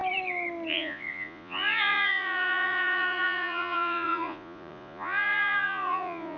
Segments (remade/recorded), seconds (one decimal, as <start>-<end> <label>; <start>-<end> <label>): 0.0-0.7 recorded; 0.7-6.4 remade